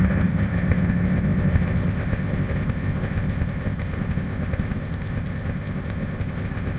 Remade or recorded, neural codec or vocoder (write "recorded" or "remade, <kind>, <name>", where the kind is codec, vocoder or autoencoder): remade, codec, ZipCodec